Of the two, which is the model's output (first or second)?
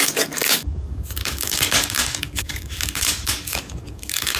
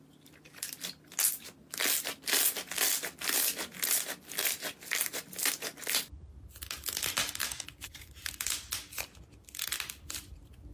first